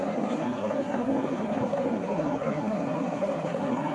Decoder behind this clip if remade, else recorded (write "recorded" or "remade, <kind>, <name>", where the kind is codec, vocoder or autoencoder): remade, codec, SNAC